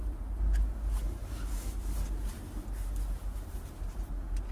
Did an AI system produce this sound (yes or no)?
no